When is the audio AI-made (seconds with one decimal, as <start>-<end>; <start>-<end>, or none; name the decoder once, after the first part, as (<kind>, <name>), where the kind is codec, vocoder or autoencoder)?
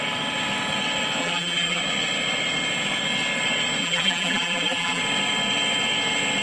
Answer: 1.2-1.8 (vocoder, BigVGAN v2); 3.8-5.0